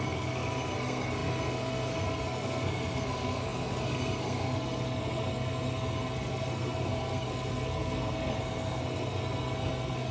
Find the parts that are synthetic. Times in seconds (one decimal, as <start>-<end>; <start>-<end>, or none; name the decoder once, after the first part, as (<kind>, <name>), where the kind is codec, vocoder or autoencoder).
0.0-10.1 (codec, SNAC)